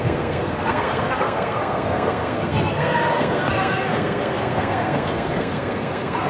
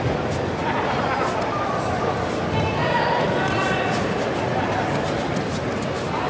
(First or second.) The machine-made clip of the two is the first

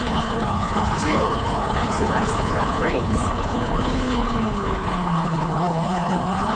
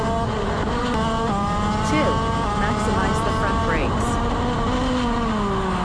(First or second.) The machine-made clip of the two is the first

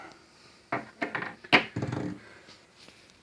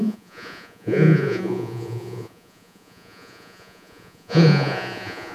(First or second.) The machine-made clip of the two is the second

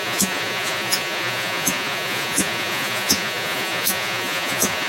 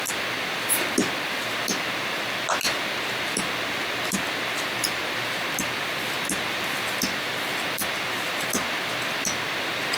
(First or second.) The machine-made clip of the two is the first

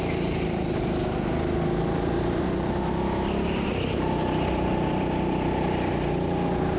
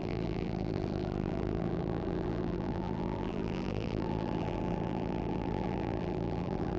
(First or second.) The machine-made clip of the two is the second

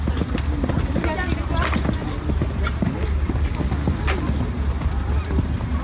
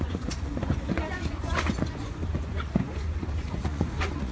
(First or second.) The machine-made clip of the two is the second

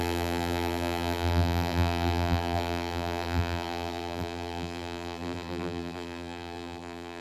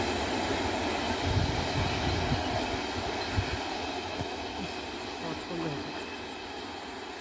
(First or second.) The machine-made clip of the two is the first